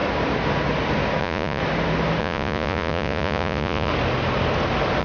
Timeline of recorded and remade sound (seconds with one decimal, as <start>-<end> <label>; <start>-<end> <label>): 0.0-1.2 recorded; 1.2-1.6 remade; 1.6-2.2 recorded; 2.2-3.9 remade; 3.9-5.0 recorded